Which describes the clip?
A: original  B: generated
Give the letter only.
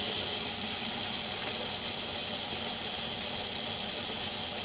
A